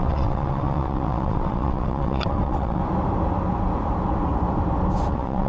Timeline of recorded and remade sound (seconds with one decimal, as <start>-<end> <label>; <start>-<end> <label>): 0.0-2.8 remade; 2.8-5.1 recorded; 5.1-5.5 remade